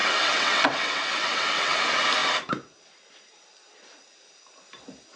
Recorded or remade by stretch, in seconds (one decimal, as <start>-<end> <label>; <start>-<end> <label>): 0.0-1.8 remade; 1.8-5.2 recorded